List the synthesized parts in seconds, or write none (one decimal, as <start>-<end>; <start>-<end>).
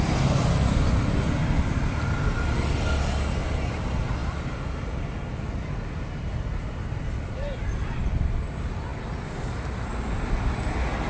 none